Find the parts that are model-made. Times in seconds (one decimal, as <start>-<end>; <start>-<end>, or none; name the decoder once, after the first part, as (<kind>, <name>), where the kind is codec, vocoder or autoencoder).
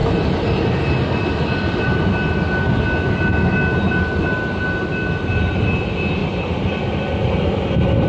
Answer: 6.2-6.8 (vocoder, BigVGAN v2)